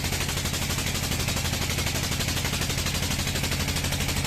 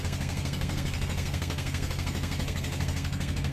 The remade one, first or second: second